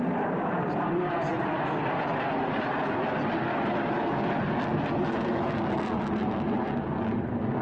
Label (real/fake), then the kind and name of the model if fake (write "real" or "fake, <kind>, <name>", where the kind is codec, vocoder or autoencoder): real